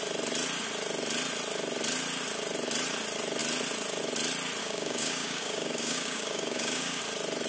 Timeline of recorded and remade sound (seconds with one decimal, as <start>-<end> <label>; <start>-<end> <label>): 0.0-4.6 recorded; 4.6-7.0 remade; 7.0-7.5 recorded